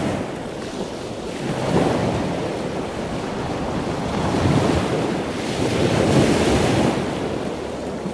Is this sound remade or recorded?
recorded